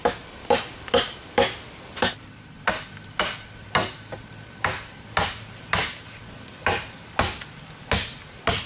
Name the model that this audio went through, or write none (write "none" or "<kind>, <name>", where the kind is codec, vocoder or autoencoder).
none